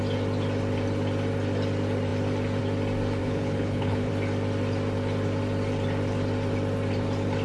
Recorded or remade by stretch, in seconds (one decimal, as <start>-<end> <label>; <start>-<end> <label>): 0.0-3.2 recorded; 3.2-4.1 remade; 4.1-7.4 recorded